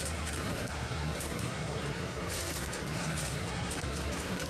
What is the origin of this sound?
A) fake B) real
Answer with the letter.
A